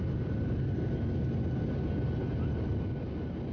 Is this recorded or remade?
recorded